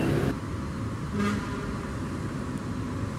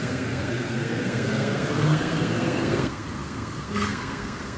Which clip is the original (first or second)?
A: first